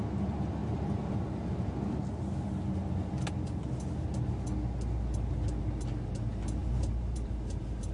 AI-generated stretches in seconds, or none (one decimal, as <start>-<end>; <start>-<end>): 0.6-2.1; 6.6-7.9